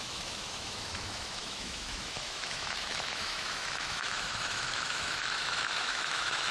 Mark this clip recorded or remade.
remade